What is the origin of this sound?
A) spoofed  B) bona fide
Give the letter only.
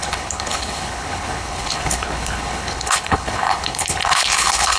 A